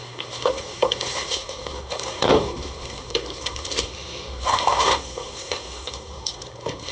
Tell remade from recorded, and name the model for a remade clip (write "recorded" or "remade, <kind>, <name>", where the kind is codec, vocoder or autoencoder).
remade, codec, SNAC